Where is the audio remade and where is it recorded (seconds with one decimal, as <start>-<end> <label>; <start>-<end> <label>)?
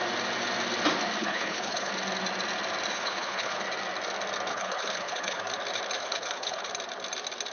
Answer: 0.0-1.2 recorded; 1.2-1.9 remade; 1.9-2.9 recorded; 2.9-3.6 remade; 3.6-4.5 recorded; 4.5-5.4 remade; 5.4-6.0 recorded; 6.0-6.7 remade; 6.7-7.5 recorded